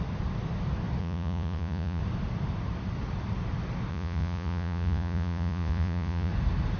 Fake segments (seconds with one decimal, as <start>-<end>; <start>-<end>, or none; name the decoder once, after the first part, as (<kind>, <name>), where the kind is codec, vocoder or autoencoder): 1.0-2.0 (vocoder, Vocos); 3.9-6.3